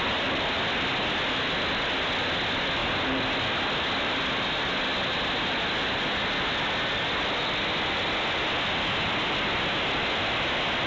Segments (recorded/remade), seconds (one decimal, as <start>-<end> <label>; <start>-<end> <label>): 0.0-10.9 recorded